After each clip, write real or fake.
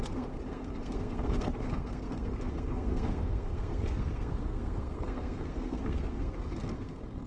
fake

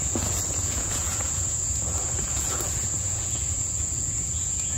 fake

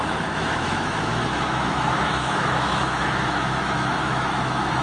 fake